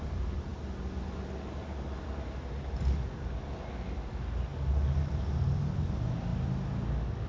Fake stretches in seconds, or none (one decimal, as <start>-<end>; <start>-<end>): none